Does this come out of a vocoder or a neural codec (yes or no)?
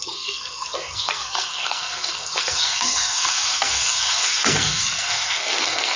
yes